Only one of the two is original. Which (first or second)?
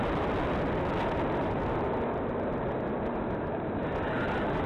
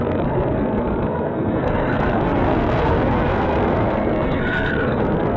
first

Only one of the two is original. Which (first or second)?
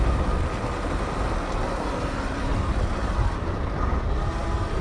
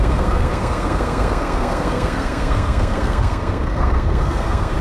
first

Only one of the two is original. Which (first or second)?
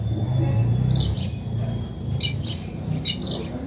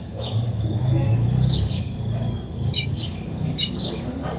first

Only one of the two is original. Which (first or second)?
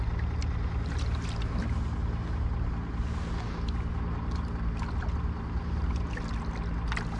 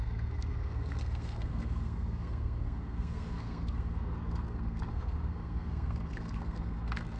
first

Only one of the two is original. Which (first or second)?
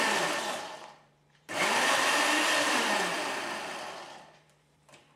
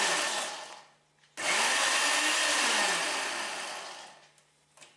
second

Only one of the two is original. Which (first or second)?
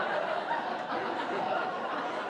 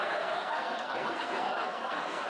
first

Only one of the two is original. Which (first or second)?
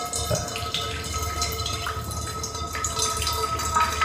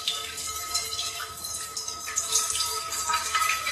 first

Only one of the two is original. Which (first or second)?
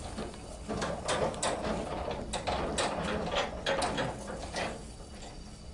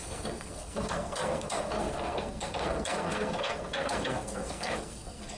first